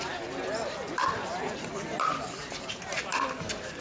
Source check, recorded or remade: recorded